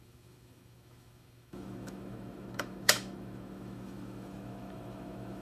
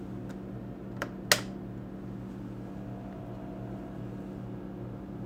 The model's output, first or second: first